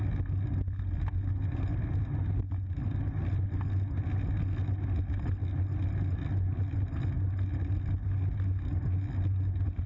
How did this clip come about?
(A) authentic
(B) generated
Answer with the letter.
A